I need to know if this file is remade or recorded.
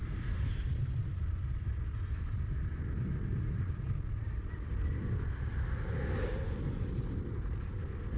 remade